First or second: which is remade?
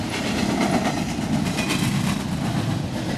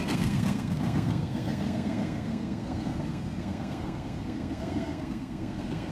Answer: second